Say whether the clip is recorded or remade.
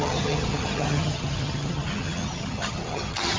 remade